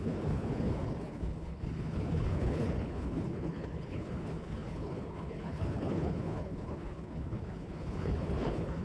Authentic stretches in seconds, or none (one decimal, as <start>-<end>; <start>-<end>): none